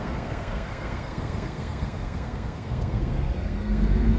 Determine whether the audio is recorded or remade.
remade